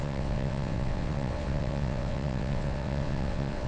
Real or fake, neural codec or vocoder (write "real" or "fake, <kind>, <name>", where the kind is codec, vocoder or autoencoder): fake, vocoder, WaveNeXt